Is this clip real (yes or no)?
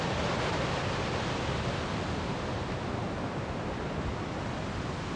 yes